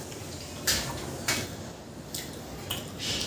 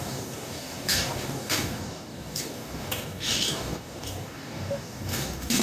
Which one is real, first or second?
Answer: first